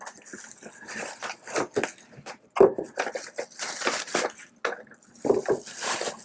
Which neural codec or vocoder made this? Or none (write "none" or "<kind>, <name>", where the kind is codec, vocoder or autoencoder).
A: none